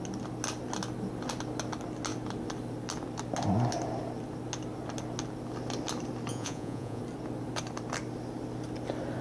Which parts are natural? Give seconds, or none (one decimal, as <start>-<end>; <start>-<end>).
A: 0.0-6.3; 7.0-9.2